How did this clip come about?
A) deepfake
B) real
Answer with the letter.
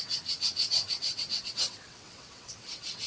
A